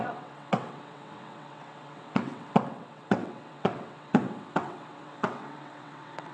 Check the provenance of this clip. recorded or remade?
remade